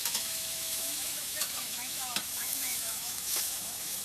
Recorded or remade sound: remade